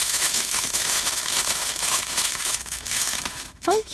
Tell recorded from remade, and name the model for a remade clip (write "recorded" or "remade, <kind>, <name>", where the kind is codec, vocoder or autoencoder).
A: remade, autoencoder, DAC-VAE